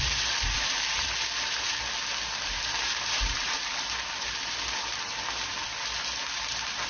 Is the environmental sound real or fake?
real